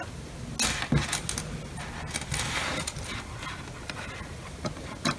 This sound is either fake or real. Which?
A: real